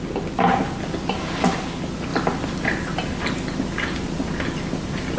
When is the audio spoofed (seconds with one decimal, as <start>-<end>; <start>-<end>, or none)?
none